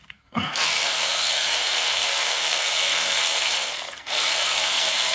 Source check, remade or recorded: remade